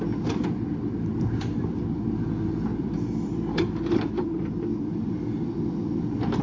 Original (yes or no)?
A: no